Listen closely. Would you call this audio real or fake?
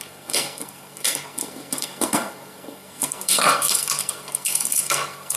fake